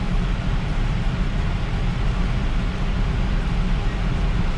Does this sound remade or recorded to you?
recorded